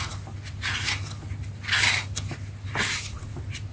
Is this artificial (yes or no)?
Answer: no